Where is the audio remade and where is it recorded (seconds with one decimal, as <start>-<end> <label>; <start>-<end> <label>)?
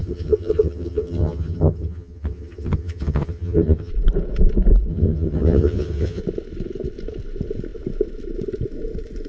0.0-3.9 remade; 3.9-4.9 recorded; 4.9-6.2 remade; 6.2-9.3 recorded